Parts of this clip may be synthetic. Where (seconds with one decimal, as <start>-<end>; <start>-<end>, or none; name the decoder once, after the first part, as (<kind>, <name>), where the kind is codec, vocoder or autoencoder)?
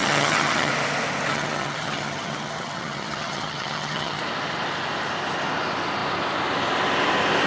0.0-0.7 (vocoder, HiFi-GAN); 1.3-4.2